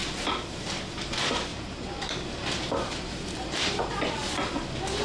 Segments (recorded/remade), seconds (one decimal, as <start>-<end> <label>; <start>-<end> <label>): 0.0-0.8 remade; 0.8-1.5 recorded; 1.5-4.5 remade; 4.5-5.0 recorded